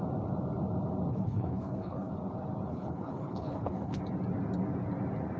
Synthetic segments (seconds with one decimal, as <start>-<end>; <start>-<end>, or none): 1.1-2.1; 2.7-4.0